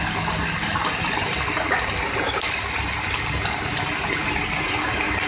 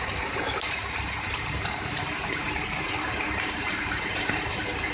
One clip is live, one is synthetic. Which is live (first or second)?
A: first